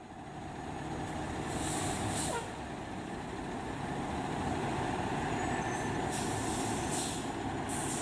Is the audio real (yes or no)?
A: yes